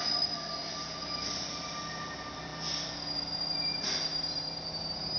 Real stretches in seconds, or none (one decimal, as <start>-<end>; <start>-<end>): 0.0-5.2